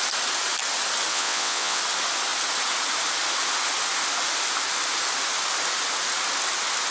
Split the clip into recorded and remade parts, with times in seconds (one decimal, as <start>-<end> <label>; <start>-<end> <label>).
0.0-1.1 recorded; 1.1-1.8 remade; 1.8-6.9 recorded